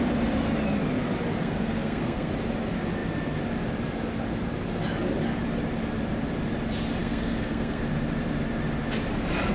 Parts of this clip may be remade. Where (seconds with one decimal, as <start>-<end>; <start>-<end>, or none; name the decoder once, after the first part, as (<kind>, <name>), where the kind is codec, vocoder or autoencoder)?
1.4-2.3 (codec, SNAC); 7.0-7.8